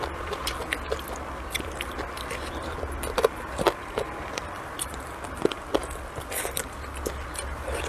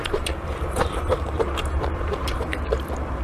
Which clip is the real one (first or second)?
first